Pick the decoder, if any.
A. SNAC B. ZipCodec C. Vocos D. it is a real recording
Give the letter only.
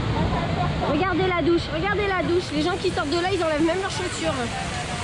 D